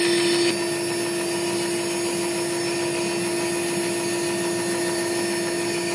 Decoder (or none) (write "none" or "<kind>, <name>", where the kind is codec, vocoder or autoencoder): none